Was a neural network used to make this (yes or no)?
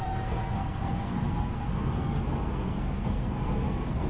yes